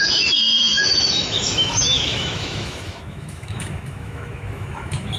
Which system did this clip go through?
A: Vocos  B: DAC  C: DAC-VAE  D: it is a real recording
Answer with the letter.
C